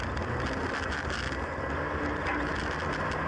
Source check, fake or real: real